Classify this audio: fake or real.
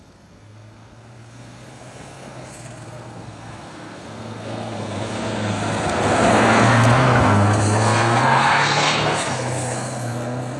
fake